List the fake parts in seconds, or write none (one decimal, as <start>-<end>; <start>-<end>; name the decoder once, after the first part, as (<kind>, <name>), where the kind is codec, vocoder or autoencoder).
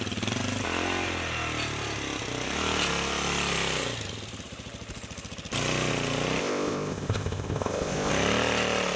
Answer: 6.4-8.1 (codec, ZipCodec)